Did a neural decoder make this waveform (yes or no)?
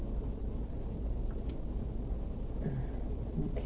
no